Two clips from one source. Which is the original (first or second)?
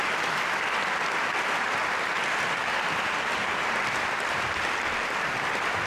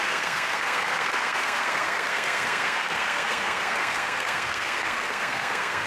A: first